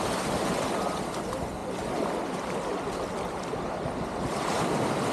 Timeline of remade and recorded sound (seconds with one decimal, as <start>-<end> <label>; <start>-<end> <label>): 0.0-5.1 recorded